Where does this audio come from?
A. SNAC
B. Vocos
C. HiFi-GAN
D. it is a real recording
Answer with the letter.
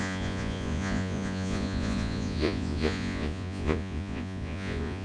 B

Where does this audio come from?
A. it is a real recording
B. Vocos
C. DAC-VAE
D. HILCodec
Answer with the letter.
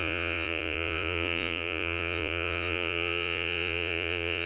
B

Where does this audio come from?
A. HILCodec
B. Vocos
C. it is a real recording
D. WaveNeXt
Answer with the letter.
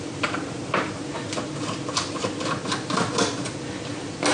C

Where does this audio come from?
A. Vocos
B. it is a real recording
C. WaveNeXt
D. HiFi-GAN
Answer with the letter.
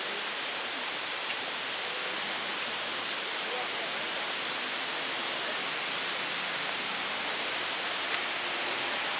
B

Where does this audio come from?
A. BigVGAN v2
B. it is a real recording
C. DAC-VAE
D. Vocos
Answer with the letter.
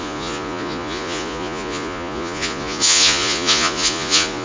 D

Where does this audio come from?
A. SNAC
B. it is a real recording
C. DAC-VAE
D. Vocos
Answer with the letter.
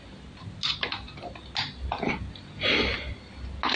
B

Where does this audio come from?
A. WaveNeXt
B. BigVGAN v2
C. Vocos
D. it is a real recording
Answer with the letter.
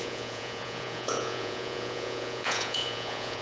C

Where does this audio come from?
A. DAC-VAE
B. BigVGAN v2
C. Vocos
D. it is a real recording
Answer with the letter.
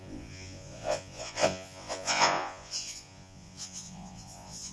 C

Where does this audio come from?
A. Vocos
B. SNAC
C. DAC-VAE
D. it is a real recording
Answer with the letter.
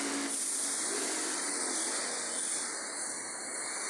D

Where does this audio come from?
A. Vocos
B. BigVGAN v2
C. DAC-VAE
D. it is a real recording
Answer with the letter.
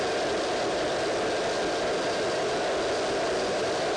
D